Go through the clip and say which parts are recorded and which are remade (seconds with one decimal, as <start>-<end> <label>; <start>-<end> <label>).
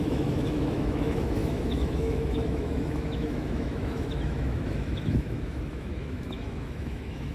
0.0-7.3 remade